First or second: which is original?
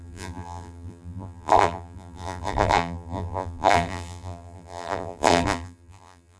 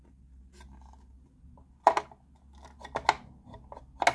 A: second